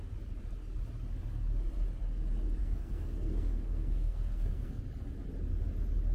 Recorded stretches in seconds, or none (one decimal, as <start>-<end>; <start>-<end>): 0.0-2.6; 4.8-6.1